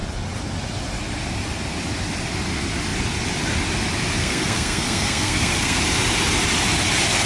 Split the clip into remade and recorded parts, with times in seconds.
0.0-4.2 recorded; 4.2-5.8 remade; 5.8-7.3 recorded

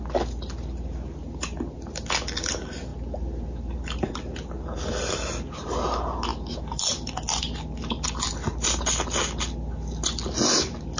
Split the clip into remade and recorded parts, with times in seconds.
0.0-11.0 recorded

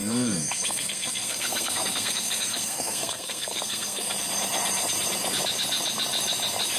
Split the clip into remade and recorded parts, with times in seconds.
0.0-4.1 remade; 4.1-6.8 recorded

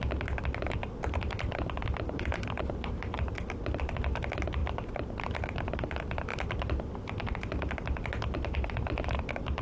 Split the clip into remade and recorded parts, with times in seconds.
0.0-9.6 recorded

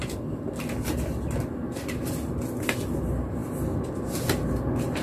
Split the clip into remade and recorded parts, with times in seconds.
0.0-5.0 recorded

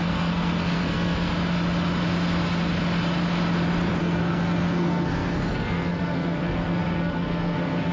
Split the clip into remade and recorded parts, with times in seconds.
0.0-1.3 remade; 1.3-4.0 recorded; 4.0-7.9 remade

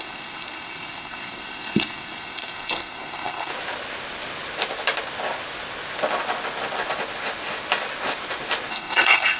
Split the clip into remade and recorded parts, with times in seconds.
0.0-3.5 remade; 3.5-8.7 recorded; 8.7-9.4 remade